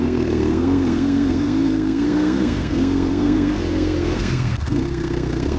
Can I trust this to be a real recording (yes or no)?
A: no